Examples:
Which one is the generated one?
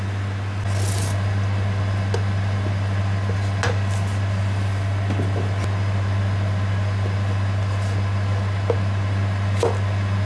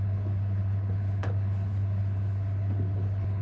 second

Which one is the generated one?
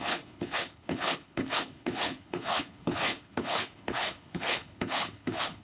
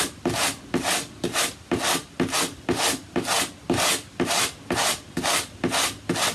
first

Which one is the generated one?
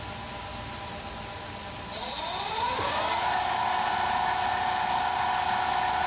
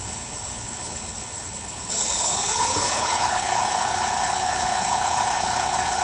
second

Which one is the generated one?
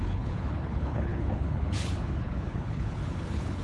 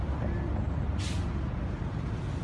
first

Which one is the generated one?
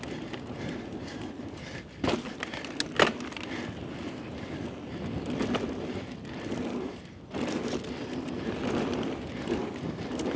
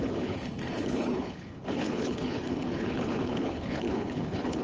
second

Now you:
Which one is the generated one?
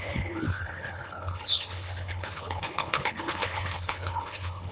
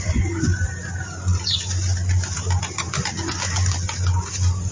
first